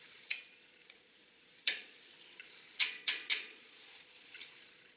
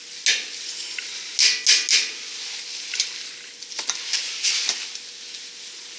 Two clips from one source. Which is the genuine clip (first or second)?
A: second